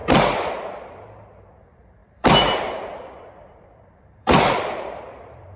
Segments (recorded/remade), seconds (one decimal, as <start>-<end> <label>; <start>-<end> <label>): 0.0-0.5 remade; 0.5-2.0 recorded; 2.0-5.6 remade